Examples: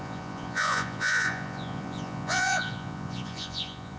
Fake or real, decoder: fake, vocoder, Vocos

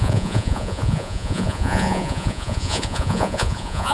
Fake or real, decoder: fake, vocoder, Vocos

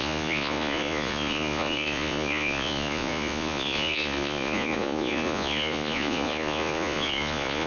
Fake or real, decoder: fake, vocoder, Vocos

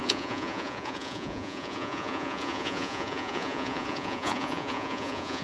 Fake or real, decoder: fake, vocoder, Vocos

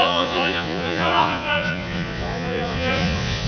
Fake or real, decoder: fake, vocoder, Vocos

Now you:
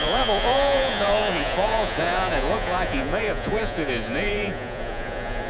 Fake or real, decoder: fake, vocoder, Vocos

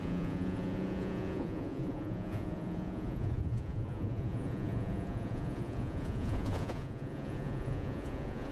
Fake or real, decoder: fake, vocoder, Vocos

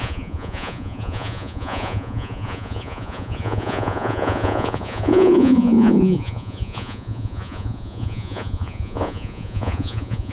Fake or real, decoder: fake, vocoder, Vocos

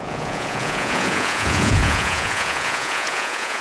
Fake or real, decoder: fake, vocoder, Vocos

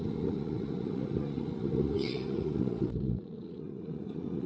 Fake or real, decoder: fake, vocoder, Vocos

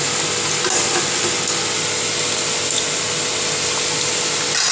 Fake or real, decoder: real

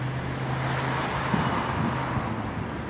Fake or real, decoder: real